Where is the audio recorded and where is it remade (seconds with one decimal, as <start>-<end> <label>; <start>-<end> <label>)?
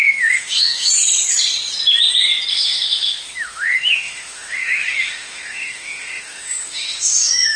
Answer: 0.0-0.9 remade; 0.9-2.5 recorded; 2.5-7.6 remade